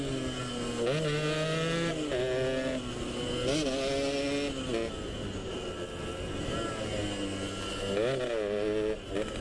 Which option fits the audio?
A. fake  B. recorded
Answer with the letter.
B